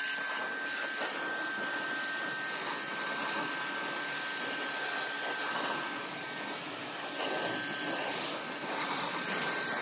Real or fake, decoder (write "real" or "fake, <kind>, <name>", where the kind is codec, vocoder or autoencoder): real